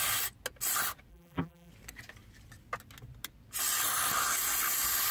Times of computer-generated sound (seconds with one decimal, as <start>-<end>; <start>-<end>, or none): 1.1-1.7

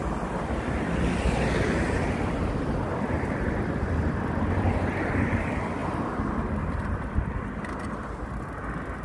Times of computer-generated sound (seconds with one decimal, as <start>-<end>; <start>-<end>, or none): none

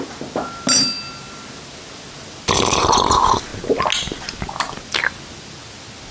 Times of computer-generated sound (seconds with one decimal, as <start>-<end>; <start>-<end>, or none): none

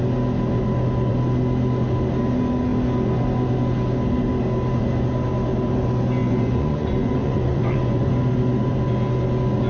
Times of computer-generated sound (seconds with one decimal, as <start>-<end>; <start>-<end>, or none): 6.2-8.1